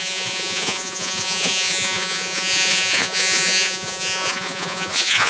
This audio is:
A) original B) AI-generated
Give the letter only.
B